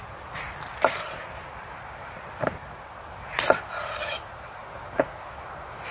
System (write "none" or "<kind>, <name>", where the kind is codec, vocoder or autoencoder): none